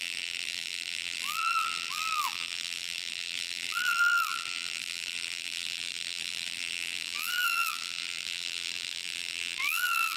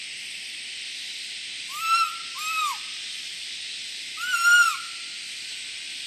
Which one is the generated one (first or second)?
first